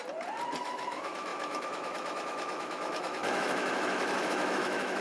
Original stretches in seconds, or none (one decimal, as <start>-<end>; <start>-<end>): 0.0-0.6